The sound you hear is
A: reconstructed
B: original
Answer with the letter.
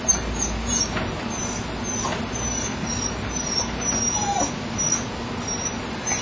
B